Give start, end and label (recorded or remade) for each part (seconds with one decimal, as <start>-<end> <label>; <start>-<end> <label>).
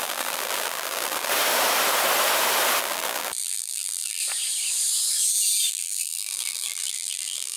0.0-1.3 remade; 1.3-2.8 recorded; 2.8-4.2 remade; 4.2-5.7 recorded; 5.7-7.6 remade